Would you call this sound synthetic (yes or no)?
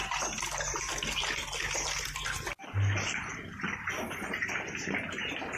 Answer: no